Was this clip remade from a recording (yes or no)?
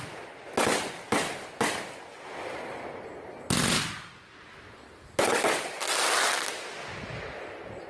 no